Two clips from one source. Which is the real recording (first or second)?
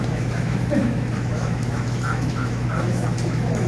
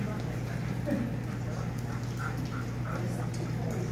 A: second